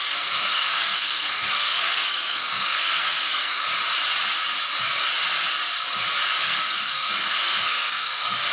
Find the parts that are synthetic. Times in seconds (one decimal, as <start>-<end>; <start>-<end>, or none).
0.0-3.6; 6.4-8.5